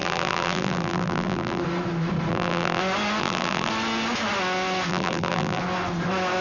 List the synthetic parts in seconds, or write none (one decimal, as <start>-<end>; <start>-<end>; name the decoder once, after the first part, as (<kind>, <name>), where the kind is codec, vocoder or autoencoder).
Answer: 0.0-1.6 (vocoder, BigVGAN v2); 2.3-2.8; 3.2-3.7; 4.9-5.6